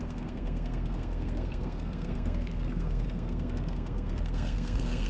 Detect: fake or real fake